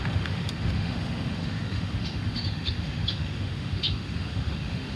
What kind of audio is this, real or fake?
fake